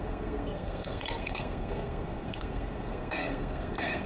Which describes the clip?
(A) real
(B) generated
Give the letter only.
B